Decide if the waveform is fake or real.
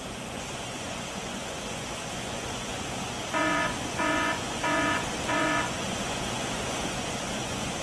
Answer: fake